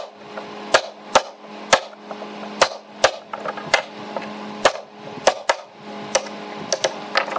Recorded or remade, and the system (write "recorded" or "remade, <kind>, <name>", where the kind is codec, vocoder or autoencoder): recorded